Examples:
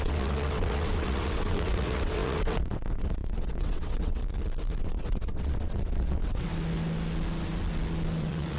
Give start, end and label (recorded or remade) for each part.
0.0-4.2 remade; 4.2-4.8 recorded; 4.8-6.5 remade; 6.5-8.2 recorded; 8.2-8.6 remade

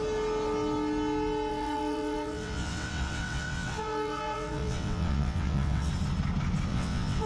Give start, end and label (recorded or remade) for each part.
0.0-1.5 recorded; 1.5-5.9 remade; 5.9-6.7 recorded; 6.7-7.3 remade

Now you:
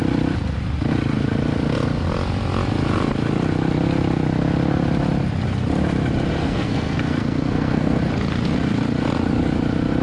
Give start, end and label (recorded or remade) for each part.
0.0-6.4 recorded; 6.4-8.0 remade; 8.0-10.0 recorded

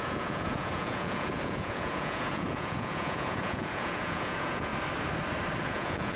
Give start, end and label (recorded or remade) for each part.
0.0-4.7 remade; 4.7-5.6 recorded; 5.6-6.2 remade

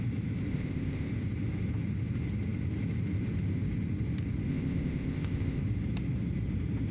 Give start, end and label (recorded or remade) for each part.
0.0-0.5 recorded; 0.5-1.1 remade; 1.1-4.5 recorded; 4.5-5.6 remade; 5.6-6.9 recorded